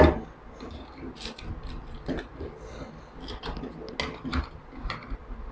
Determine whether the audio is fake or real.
real